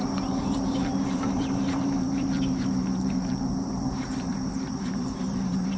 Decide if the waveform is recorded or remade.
remade